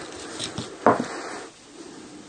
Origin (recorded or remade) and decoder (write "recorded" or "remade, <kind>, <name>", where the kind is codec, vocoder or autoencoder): recorded